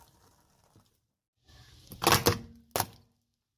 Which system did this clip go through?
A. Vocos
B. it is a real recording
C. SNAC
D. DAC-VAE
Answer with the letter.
B